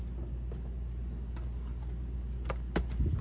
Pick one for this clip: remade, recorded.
recorded